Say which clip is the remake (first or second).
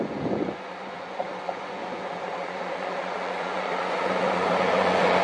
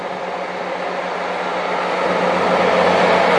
first